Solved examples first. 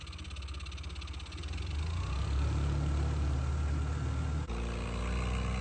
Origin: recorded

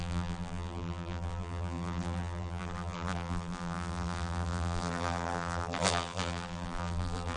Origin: remade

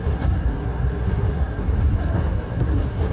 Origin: remade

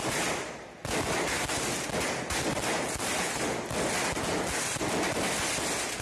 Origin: recorded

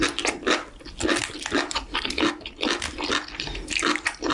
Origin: recorded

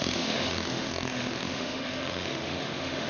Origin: remade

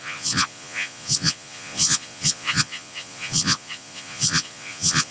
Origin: remade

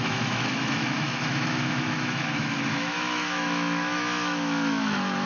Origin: remade